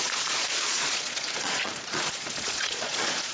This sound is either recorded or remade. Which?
remade